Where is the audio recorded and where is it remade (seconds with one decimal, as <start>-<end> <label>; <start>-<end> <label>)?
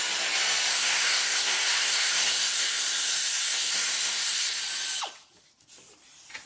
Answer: 0.0-0.7 recorded; 0.7-4.6 remade; 4.6-6.5 recorded